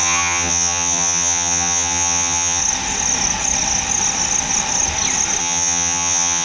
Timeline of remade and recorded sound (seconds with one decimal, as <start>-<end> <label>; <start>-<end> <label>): 0.0-2.6 remade; 2.6-5.4 recorded; 5.4-6.4 remade

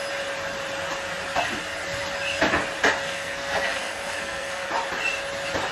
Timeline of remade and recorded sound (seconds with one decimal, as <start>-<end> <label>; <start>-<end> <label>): 0.0-3.0 recorded; 3.0-4.7 remade; 4.7-5.7 recorded

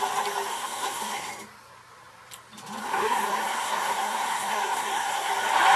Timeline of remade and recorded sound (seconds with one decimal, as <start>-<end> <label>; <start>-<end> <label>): 0.0-0.5 recorded; 0.5-1.3 remade; 1.3-2.8 recorded; 2.8-5.3 remade; 5.3-5.8 recorded

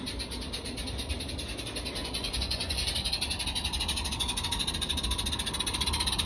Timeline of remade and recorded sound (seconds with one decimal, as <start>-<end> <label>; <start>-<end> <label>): 0.0-2.0 recorded; 2.0-2.9 remade; 2.9-6.3 recorded